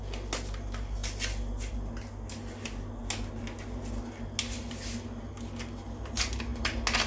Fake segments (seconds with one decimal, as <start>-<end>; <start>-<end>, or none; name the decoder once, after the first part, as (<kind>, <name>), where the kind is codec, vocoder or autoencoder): none